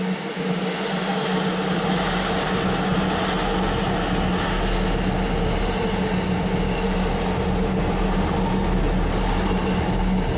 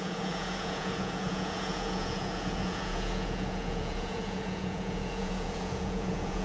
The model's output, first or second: second